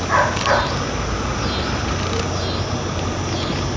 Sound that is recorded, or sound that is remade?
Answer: recorded